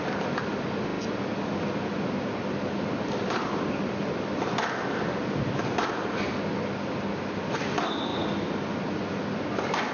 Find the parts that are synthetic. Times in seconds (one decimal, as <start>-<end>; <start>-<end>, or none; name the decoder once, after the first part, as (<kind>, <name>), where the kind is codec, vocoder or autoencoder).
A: none